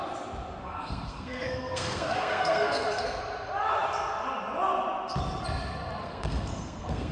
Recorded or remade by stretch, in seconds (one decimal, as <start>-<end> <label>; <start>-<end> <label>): 0.0-0.6 recorded; 0.6-3.2 remade; 3.2-6.0 recorded; 6.0-7.1 remade